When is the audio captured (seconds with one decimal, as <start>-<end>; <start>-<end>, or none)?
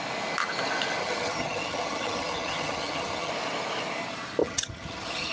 0.0-1.0; 3.3-4.4